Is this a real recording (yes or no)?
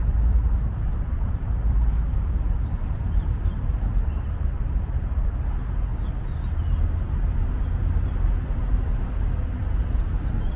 yes